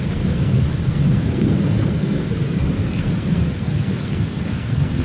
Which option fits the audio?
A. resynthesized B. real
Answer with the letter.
A